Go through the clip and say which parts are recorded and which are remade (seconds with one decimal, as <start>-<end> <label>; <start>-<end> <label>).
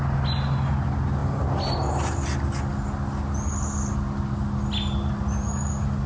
0.0-6.1 recorded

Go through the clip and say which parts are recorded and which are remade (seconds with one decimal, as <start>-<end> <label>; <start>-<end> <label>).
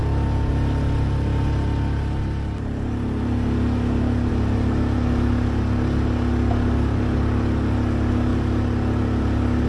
0.0-9.7 recorded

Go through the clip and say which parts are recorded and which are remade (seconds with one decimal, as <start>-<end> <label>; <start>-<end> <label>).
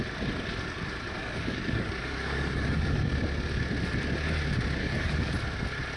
0.0-1.2 recorded; 1.2-3.1 remade; 3.1-4.8 recorded; 4.8-5.3 remade; 5.3-6.0 recorded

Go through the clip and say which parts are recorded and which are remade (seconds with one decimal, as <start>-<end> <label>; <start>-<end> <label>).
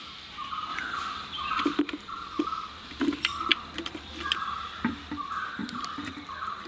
0.0-0.7 remade; 0.7-1.8 recorded; 1.8-3.5 remade; 3.5-5.0 recorded; 5.0-6.7 remade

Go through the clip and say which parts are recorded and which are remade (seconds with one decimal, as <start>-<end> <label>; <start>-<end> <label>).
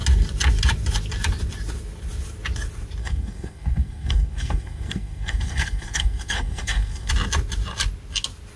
0.0-3.0 recorded; 3.0-7.1 remade; 7.1-8.6 recorded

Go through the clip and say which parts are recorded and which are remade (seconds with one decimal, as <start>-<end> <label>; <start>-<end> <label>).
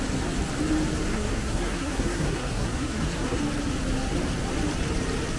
0.0-1.1 recorded; 1.1-3.4 remade; 3.4-5.4 recorded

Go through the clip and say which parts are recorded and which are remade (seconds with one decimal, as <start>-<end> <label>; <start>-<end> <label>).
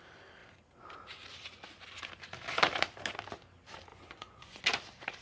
0.0-3.9 recorded; 3.9-4.6 remade; 4.6-5.2 recorded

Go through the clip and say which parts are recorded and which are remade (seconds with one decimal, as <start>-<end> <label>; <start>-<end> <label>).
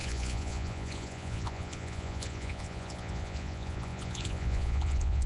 0.0-5.3 remade